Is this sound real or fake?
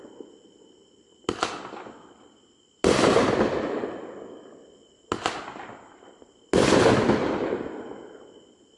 real